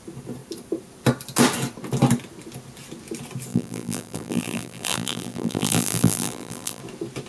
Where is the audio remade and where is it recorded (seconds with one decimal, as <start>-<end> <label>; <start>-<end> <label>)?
0.0-3.5 recorded; 3.5-6.8 remade; 6.8-7.3 recorded